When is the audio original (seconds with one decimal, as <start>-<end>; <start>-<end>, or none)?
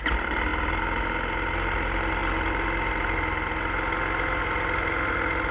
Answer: 0.0-5.5